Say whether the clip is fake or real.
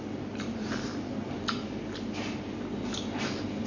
real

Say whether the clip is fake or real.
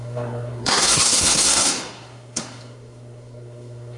fake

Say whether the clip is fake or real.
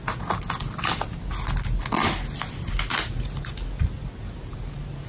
real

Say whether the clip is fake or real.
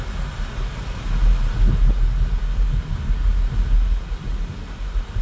real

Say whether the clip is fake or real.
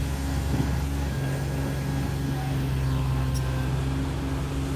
real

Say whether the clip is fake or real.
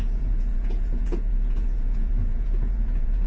fake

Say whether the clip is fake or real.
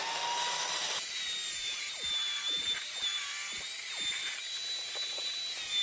real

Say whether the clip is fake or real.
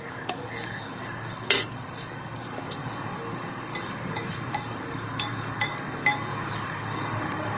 fake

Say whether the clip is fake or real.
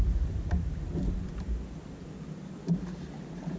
real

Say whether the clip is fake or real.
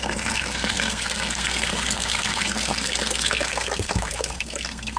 fake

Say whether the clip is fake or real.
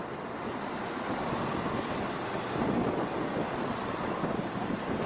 real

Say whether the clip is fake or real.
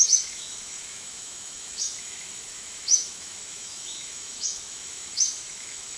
fake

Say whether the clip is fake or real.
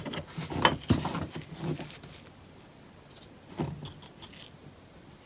real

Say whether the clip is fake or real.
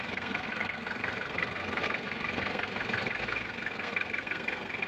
fake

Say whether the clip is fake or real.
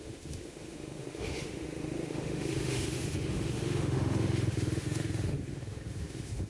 fake